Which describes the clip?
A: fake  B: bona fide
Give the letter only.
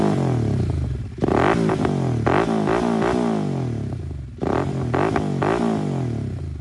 B